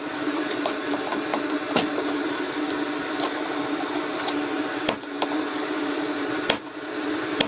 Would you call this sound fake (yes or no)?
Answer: no